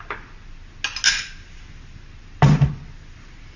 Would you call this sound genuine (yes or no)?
yes